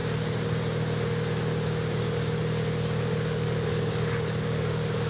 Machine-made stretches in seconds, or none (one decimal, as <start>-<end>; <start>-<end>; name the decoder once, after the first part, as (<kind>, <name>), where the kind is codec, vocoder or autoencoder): 3.1-5.1 (codec, DAC)